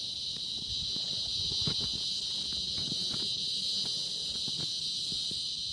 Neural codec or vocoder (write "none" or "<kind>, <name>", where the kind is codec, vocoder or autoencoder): none